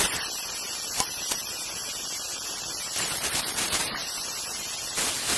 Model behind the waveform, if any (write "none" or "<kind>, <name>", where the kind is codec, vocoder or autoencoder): vocoder, BigVGAN v2